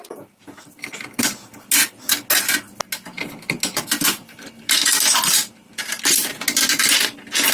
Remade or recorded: recorded